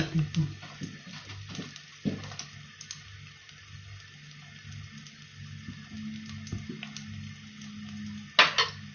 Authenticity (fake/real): real